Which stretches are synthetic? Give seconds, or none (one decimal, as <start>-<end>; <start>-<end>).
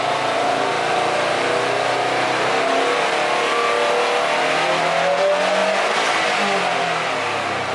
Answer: none